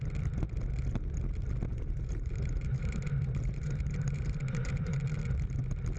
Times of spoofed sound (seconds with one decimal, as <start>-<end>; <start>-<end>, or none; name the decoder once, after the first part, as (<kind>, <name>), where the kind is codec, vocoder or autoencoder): 1.7-5.0 (vocoder, BigVGAN v2)